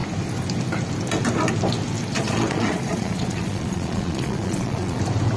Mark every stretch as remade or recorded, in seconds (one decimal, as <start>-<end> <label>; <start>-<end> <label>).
0.0-2.1 recorded; 2.1-5.0 remade; 5.0-5.4 recorded